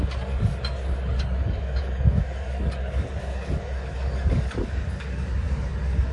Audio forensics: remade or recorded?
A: remade